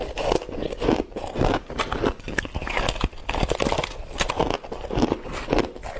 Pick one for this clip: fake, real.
real